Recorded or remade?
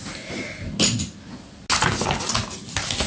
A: recorded